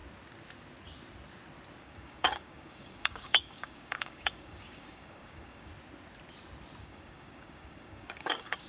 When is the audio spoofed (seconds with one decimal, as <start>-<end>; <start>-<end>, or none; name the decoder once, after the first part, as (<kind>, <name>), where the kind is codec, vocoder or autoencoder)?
1.8-5.7 (codec, DAC); 6.8-8.7